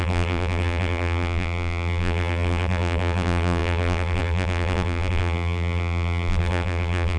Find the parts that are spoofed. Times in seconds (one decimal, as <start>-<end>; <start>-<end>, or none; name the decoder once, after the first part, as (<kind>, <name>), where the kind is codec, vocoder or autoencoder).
0.0-7.2 (vocoder, BigVGAN v2)